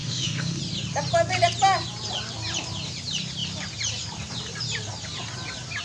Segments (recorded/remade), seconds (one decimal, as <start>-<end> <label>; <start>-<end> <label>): 0.0-0.6 remade; 0.6-5.8 recorded